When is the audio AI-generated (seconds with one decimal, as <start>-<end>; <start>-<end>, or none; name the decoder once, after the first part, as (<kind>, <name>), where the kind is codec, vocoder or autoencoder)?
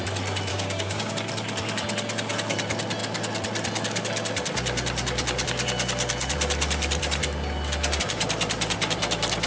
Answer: 0.5-1.1 (codec, DAC)